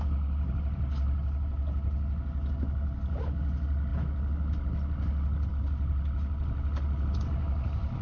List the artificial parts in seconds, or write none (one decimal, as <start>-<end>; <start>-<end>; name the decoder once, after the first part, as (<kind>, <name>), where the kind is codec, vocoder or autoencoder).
none